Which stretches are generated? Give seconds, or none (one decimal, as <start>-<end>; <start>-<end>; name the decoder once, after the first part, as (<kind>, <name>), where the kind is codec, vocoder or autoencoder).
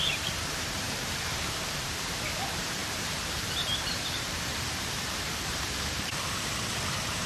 0.0-7.3 (vocoder, BigVGAN v2)